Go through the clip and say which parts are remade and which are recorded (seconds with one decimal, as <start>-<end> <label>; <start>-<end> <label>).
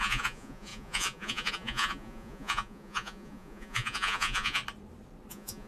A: 0.0-4.6 remade; 4.6-5.3 recorded; 5.3-5.7 remade